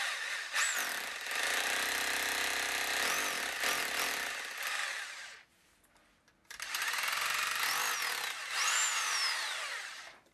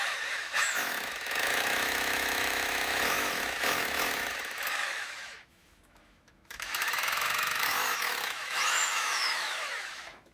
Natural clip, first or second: first